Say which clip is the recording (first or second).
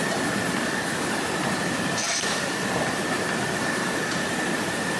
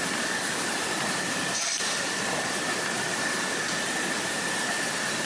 first